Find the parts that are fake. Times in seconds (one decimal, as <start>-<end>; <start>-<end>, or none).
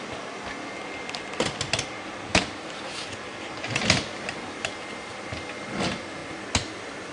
none